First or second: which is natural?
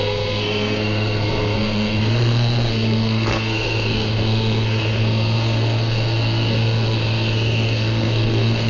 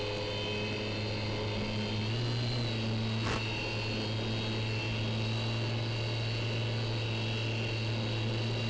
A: second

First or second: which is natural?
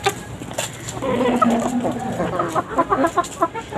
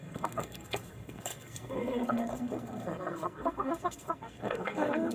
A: first